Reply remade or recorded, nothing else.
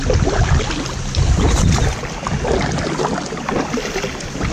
recorded